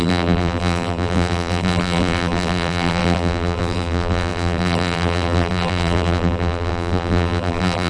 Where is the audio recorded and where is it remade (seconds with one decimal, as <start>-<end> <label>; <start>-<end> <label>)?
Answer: 0.0-7.9 remade